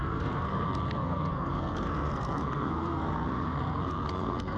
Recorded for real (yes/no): no